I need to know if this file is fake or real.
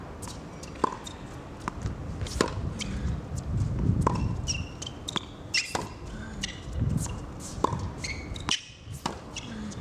real